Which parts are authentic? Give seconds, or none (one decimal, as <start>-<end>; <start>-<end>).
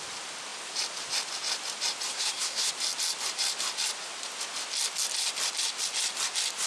0.0-2.1; 2.7-6.7